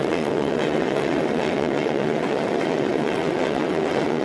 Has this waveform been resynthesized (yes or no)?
yes